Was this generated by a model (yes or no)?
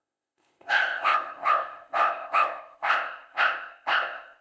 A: yes